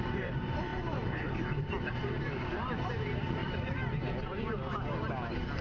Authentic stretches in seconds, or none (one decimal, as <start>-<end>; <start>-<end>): 3.4-5.6